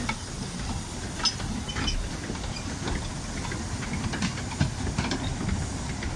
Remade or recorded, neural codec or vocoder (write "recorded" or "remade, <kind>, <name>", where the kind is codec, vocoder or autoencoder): recorded